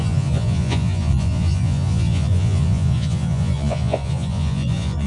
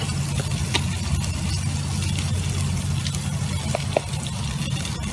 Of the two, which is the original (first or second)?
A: second